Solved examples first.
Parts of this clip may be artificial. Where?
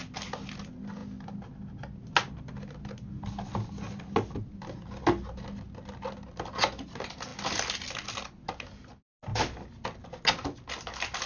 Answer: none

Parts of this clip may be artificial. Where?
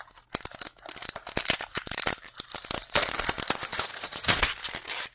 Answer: 3.7-4.4 (vocoder, Vocos)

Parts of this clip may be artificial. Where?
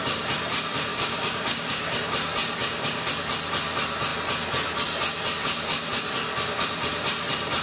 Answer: 0.9-2.0 (codec, DAC); 2.6-3.1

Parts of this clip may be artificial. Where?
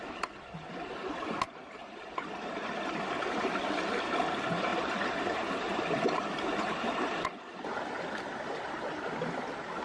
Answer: 1.8-2.9 (vocoder, BigVGAN v2); 4.7-8.9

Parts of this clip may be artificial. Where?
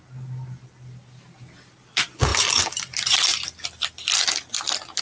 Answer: none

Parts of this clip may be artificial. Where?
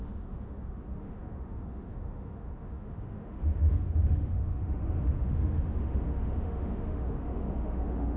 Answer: 0.0-8.2 (autoencoder, DAC-VAE)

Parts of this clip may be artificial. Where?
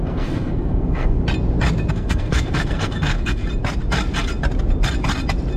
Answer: 0.0-1.2 (codec, SNAC); 1.9-3.4